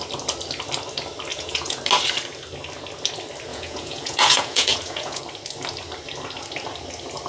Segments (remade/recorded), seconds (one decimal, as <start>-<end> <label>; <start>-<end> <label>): 0.0-1.3 recorded; 1.3-1.8 remade; 1.8-3.5 recorded; 3.5-5.2 remade; 5.2-7.3 recorded